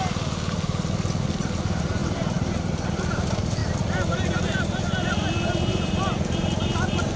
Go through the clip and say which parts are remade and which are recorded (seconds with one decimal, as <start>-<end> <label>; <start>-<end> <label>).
0.0-2.0 recorded; 2.0-2.6 remade; 2.6-5.7 recorded; 5.7-7.2 remade